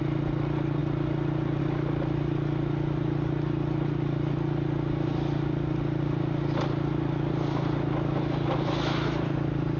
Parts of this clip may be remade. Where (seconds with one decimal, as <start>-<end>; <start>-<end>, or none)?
none